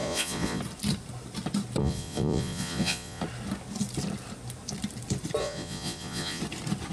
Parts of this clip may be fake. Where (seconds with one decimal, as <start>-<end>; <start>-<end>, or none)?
0.0-0.6; 1.8-3.2; 5.4-6.4